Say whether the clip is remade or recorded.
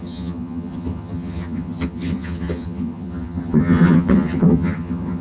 remade